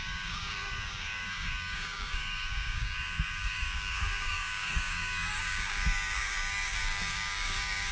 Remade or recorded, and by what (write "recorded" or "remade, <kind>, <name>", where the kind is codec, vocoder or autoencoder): remade, codec, DAC